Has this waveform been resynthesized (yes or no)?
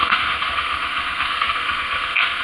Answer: yes